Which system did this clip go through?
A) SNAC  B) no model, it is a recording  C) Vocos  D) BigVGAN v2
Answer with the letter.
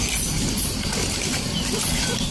B